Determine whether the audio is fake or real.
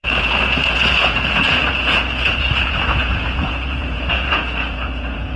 fake